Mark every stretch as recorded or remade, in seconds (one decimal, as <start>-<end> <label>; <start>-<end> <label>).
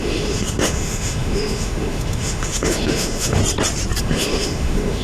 0.0-3.4 remade; 3.4-4.0 recorded; 4.0-5.0 remade